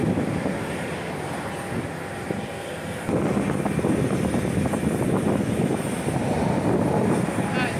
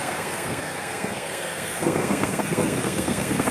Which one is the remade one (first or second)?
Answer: second